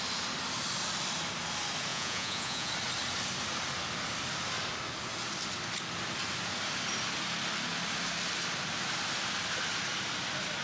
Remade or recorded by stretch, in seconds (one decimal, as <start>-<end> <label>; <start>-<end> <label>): 0.0-1.9 recorded; 1.9-2.7 remade; 2.7-10.6 recorded